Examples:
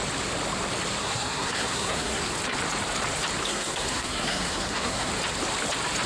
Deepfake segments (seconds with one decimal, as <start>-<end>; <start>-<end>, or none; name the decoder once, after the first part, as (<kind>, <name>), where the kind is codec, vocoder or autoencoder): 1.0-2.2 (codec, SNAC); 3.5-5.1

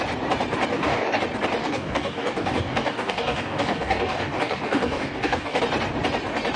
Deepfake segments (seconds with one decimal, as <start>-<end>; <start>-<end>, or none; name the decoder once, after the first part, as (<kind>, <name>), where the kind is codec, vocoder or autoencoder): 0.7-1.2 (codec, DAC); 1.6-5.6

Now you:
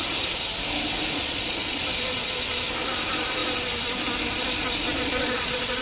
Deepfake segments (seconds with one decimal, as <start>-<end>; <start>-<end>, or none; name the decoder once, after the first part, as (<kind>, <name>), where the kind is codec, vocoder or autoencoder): 1.2-1.8 (vocoder, Vocos); 4.9-5.8